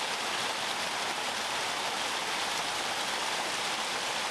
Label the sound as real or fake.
real